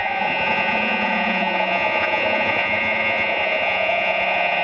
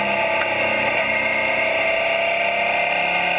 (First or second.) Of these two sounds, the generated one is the first